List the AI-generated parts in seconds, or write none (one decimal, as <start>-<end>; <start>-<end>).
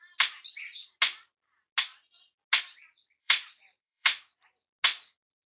3.2-4.2